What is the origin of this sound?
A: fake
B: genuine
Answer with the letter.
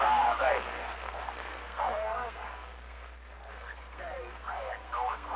A